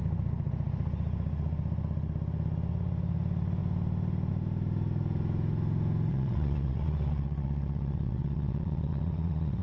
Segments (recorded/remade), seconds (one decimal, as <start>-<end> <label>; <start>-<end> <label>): 0.0-6.1 recorded; 6.1-9.6 remade